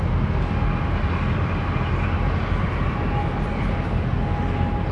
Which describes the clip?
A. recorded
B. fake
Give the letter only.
A